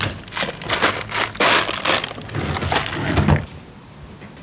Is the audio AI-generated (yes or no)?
no